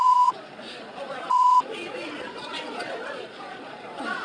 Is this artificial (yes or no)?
yes